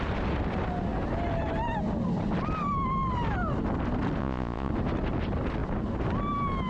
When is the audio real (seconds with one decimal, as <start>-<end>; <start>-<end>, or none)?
0.0-4.2; 4.7-6.7